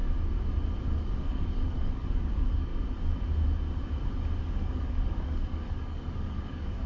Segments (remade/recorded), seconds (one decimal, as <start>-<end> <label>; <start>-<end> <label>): 0.0-0.8 recorded; 0.8-2.7 remade; 2.7-4.4 recorded; 4.4-6.9 remade